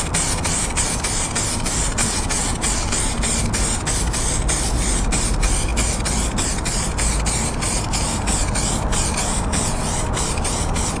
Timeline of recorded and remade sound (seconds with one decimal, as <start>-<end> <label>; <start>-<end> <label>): 0.0-2.0 recorded; 2.0-2.9 remade; 2.9-11.0 recorded